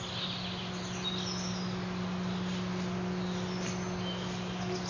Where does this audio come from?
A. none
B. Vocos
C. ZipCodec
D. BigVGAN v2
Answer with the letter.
A